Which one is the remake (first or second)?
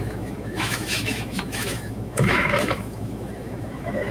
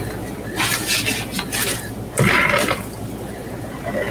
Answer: first